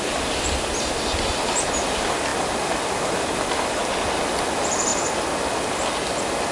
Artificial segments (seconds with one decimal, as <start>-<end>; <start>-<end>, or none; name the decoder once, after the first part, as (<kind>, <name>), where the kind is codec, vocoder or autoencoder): 0.0-3.8 (vocoder, BigVGAN v2); 4.4-4.9